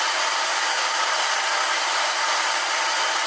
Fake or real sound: real